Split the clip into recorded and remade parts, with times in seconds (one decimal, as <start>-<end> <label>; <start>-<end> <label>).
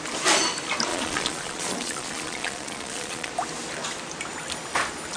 0.0-0.9 recorded; 0.9-3.3 remade; 3.3-5.2 recorded